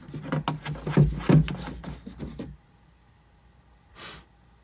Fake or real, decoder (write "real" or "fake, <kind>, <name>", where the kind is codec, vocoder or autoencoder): real